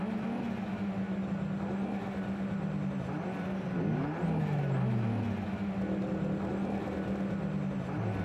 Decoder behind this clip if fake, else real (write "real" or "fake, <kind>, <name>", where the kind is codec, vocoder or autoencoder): real